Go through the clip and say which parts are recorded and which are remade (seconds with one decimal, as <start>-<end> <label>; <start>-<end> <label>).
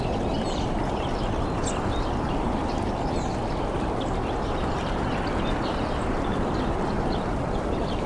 0.0-2.6 remade; 2.6-3.4 recorded; 3.4-8.1 remade